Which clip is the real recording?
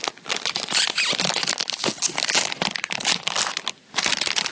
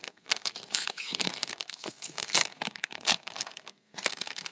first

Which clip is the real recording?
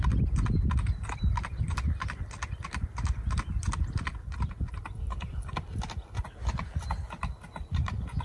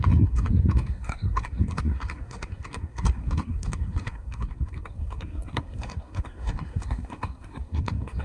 first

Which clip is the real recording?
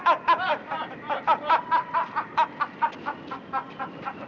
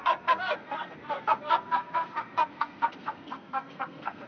first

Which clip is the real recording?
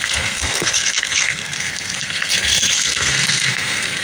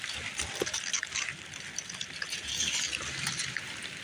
second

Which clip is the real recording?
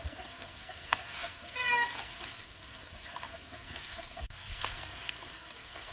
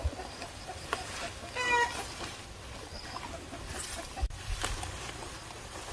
second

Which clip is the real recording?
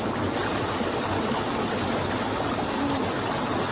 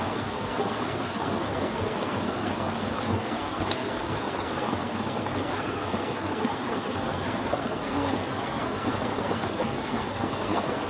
first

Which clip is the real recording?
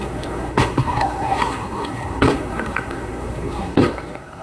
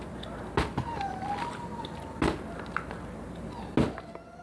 second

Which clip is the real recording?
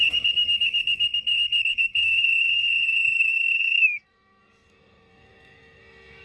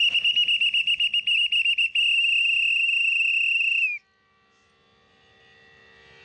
second